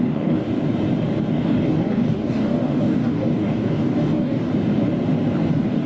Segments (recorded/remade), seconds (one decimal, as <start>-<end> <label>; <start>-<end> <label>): 0.0-0.5 remade; 0.5-1.3 recorded; 1.3-4.5 remade; 4.5-5.5 recorded; 5.5-5.9 remade